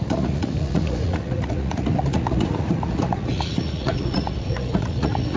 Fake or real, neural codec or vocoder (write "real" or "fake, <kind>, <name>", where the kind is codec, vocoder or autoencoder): fake, vocoder, Vocos